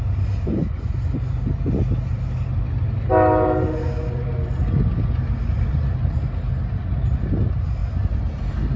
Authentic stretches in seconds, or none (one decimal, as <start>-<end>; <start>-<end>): 0.0-8.8